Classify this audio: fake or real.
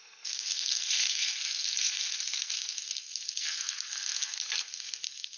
fake